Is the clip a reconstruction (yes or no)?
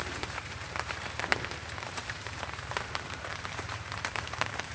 yes